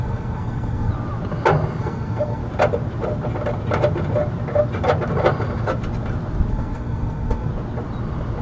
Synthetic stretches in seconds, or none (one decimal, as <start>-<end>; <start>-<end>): 0.0-0.9; 1.8-2.4; 6.5-7.5

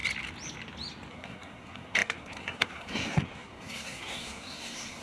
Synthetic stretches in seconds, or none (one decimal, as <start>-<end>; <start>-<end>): 1.1-5.0

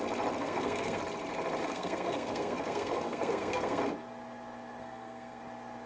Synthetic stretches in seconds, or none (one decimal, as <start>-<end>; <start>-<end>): 0.4-1.0; 1.6-3.8; 4.8-5.4

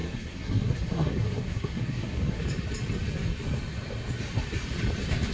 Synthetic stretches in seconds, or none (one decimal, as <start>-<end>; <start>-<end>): 0.0-2.4

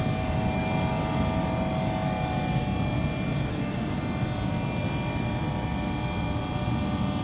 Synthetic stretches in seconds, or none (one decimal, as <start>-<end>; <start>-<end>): 3.5-4.0

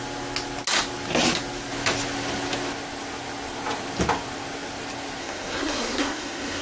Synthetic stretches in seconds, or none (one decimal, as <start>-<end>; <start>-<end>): 5.2-6.6

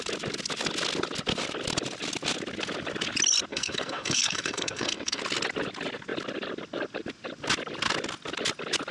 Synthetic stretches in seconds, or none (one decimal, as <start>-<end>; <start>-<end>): 3.5-5.2